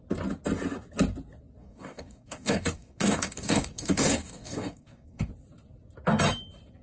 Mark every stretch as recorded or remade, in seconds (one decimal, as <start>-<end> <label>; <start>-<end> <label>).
0.0-1.6 recorded; 1.6-5.3 remade; 5.3-6.8 recorded